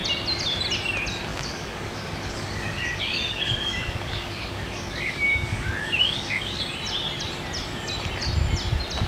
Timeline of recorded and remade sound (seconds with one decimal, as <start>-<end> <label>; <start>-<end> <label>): 0.0-1.3 recorded; 1.3-6.6 remade; 6.6-9.1 recorded